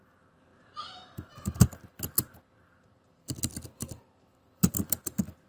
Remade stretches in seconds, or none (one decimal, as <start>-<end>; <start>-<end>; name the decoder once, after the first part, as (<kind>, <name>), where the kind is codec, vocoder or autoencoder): none